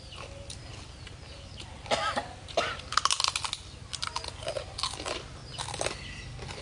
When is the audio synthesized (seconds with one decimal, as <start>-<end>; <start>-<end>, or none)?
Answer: none